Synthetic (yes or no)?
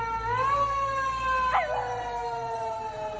no